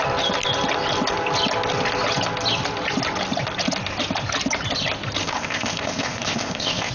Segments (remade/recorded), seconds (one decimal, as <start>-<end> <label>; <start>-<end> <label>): 0.0-5.2 recorded; 5.2-6.9 remade